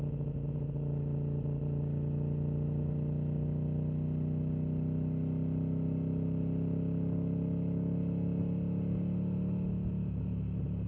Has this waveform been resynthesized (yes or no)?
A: no